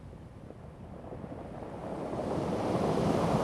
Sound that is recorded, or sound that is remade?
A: recorded